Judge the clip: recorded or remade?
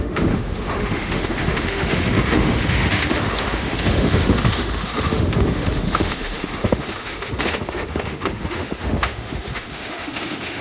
remade